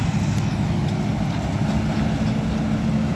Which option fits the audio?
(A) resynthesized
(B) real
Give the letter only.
B